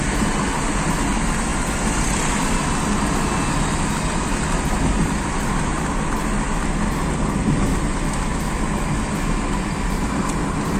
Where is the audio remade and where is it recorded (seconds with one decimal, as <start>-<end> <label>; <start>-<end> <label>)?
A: 0.0-10.8 recorded